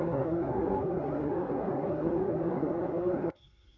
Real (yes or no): no